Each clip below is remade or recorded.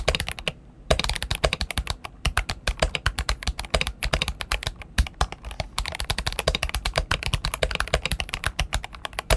remade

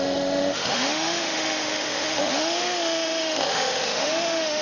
remade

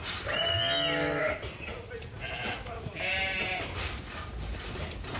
recorded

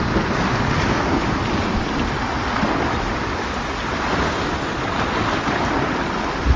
recorded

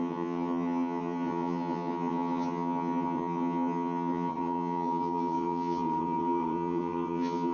remade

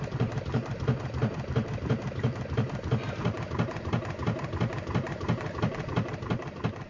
remade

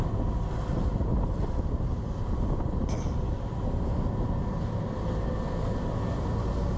recorded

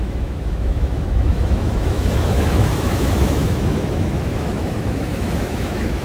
remade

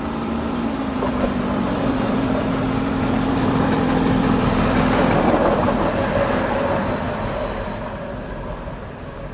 remade